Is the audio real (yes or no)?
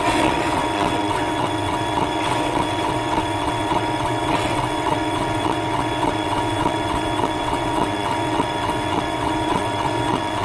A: no